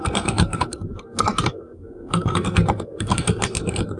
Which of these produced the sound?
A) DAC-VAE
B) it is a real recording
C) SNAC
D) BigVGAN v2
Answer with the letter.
C